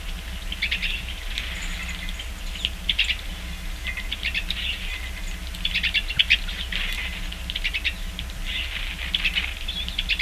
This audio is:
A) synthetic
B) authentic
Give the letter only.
B